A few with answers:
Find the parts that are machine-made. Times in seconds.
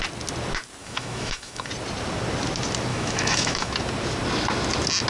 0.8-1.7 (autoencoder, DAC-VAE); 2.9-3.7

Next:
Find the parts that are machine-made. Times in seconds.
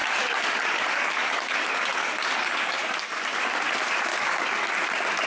0.0-3.2 (codec, DAC); 4.1-4.7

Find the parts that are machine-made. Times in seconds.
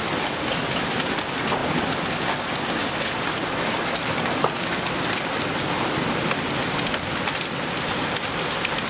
none